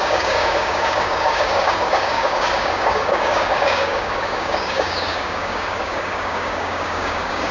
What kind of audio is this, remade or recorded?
remade